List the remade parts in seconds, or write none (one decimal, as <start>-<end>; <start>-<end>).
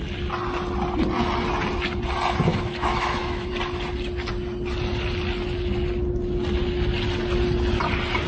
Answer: 2.5-3.5